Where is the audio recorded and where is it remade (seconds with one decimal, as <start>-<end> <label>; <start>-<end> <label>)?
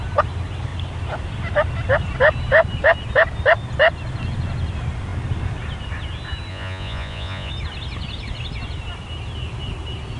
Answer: 0.0-6.5 recorded; 6.5-7.5 remade; 7.5-10.2 recorded